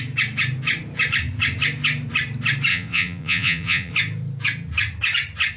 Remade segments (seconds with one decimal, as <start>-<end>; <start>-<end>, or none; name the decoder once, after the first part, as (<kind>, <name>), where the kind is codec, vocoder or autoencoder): 2.7-3.9 (vocoder, Vocos)